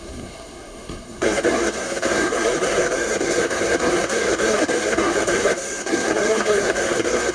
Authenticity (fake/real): fake